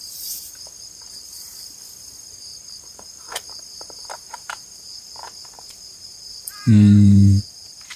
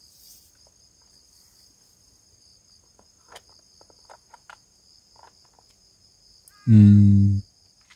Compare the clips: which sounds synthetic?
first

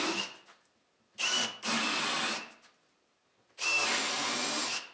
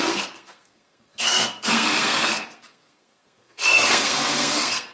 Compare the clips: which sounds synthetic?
second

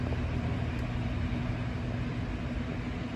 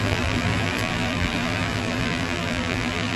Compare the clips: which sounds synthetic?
second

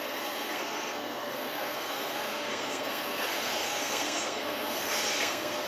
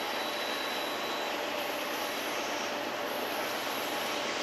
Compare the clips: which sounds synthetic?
first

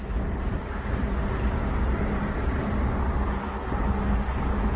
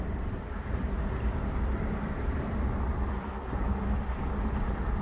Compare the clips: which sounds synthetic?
second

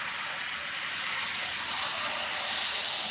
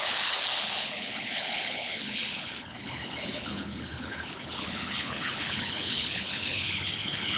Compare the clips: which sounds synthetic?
second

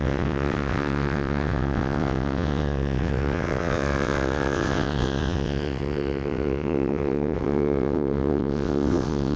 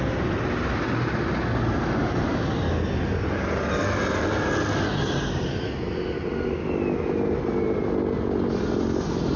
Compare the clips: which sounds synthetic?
first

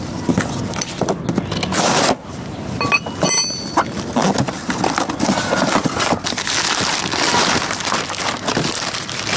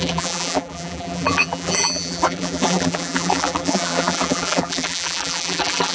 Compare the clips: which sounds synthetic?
second